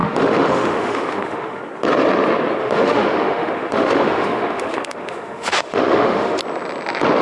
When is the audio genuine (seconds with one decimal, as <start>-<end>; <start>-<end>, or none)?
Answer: 1.6-2.6; 6.4-7.2